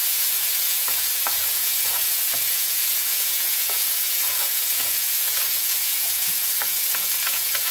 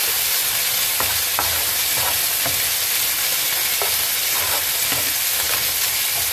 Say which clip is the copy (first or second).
first